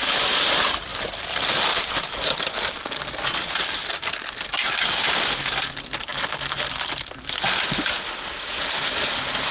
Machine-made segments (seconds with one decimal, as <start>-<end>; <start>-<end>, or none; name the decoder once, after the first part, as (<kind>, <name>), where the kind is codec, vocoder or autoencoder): none